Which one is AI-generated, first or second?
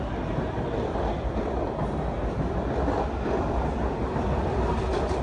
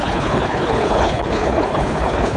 second